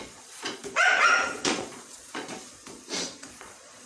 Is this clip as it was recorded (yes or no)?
no